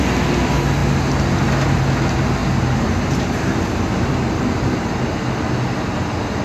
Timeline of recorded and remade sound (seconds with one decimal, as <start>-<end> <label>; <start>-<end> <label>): 0.0-6.4 recorded